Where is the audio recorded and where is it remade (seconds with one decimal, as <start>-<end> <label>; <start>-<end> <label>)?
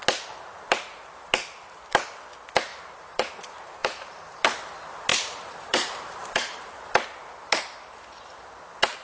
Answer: 0.0-2.7 recorded; 2.7-3.3 remade; 3.3-3.8 recorded; 3.8-4.4 remade; 4.4-5.1 recorded; 5.1-6.7 remade; 6.7-9.0 recorded